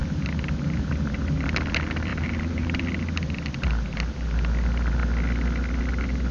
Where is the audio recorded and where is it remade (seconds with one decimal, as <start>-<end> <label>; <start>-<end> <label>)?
0.0-0.9 remade; 0.9-2.1 recorded; 2.1-2.8 remade; 2.8-6.3 recorded